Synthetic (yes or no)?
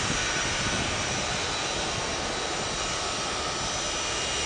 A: no